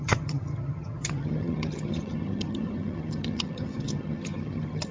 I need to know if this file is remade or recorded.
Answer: remade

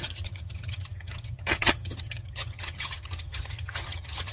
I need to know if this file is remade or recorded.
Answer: remade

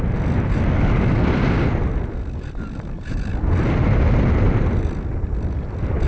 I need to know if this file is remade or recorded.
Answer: recorded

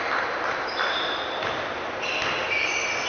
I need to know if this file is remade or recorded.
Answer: recorded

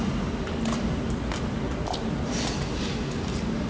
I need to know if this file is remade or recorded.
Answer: recorded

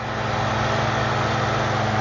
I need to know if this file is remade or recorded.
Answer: recorded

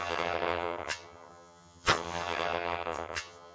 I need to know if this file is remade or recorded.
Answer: remade